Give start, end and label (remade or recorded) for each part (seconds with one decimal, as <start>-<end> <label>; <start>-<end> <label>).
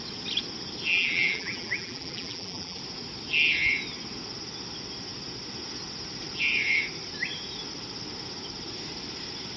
0.0-0.9 recorded; 0.9-2.8 remade; 2.8-9.6 recorded